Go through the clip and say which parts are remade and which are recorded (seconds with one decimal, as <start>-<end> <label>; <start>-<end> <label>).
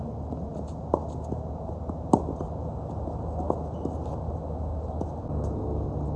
0.0-6.2 recorded